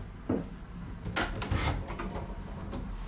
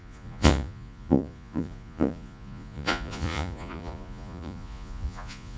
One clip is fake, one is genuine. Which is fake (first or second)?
second